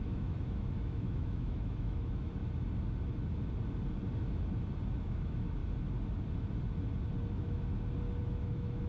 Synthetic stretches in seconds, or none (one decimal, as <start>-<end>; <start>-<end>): 0.0-2.4; 5.0-5.6; 7.3-7.7; 8.2-8.9